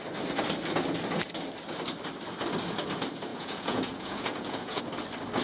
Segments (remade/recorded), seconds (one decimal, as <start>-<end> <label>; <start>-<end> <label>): 0.0-3.3 recorded; 3.3-4.8 remade; 4.8-5.4 recorded